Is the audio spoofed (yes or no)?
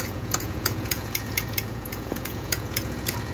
yes